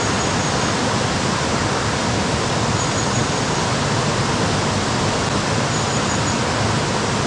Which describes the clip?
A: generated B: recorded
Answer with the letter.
B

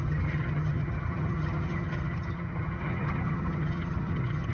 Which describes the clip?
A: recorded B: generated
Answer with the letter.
B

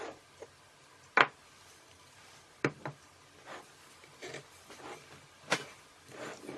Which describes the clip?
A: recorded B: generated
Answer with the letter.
A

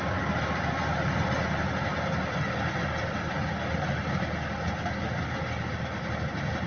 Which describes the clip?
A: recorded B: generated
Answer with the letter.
A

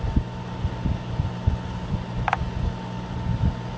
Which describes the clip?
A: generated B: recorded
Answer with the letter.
B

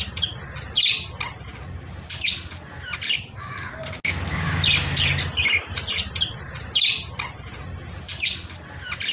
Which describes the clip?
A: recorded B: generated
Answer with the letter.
A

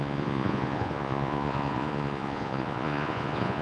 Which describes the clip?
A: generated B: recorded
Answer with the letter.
A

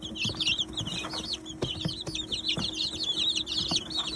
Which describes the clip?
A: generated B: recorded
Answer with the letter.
B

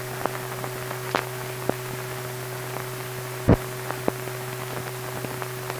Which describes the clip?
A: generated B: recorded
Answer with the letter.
B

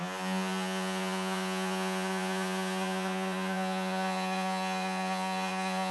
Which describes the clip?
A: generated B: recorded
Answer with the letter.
A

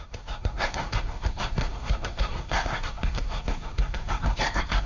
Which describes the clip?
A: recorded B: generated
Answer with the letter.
B